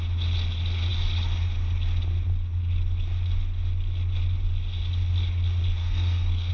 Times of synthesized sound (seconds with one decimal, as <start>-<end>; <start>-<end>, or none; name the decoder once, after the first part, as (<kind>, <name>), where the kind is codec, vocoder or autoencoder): 5.8-6.5 (codec, SNAC)